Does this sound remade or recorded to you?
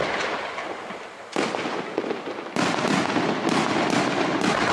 recorded